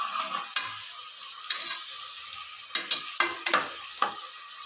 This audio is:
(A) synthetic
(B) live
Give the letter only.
B